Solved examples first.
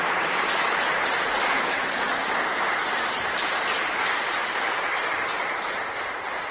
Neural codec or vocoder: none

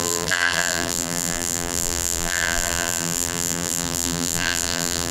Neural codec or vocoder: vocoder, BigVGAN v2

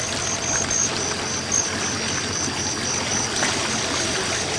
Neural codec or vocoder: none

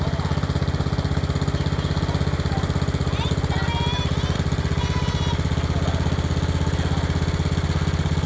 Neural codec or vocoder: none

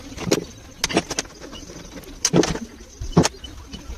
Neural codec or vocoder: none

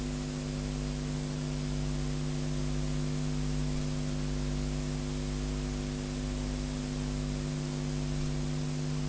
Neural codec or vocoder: none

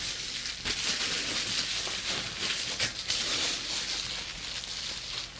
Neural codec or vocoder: none